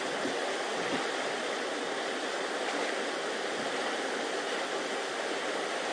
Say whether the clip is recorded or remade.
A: recorded